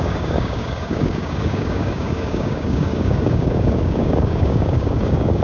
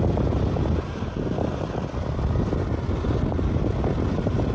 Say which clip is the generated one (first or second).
first